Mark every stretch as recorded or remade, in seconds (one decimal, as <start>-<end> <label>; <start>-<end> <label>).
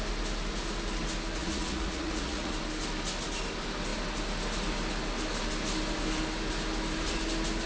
0.0-1.4 recorded; 1.4-2.5 remade; 2.5-7.7 recorded